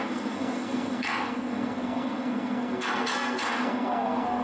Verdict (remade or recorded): remade